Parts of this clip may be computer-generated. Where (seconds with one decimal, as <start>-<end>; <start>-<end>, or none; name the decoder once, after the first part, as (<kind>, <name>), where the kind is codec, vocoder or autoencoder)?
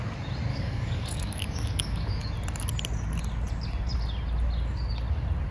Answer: 0.5-2.3 (codec, DAC)